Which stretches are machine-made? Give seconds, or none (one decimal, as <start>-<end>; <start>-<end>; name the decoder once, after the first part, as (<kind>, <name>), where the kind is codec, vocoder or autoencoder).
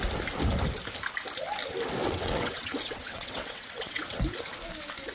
2.0-4.2 (vocoder, WaveNeXt)